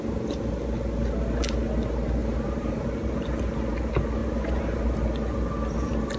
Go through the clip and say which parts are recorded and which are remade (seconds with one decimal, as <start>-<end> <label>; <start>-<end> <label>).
0.0-2.2 recorded; 2.2-3.4 remade; 3.4-4.2 recorded; 4.2-4.8 remade; 4.8-6.2 recorded